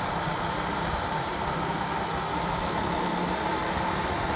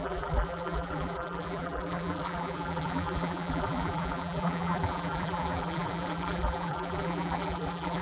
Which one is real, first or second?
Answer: first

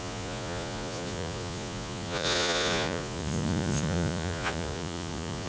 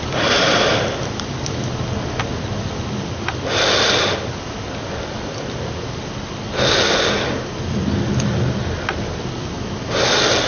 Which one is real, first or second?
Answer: second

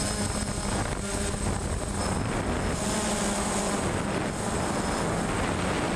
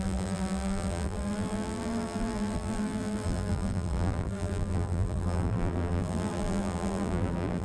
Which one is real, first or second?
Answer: first